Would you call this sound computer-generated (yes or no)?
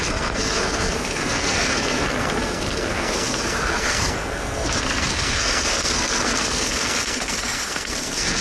yes